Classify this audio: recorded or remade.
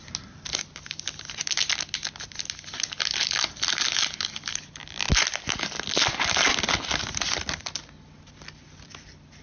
recorded